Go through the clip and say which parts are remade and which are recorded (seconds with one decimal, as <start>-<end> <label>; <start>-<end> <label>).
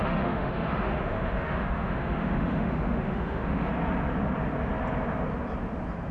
0.0-3.7 remade; 3.7-6.1 recorded